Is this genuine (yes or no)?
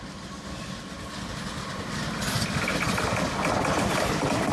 yes